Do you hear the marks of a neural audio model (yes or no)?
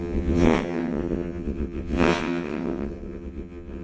yes